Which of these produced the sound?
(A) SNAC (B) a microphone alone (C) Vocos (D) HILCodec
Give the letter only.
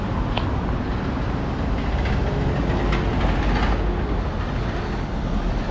B